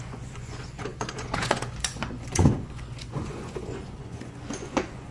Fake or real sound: fake